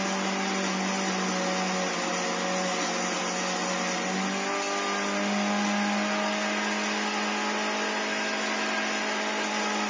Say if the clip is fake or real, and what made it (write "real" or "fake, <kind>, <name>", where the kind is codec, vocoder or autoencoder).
real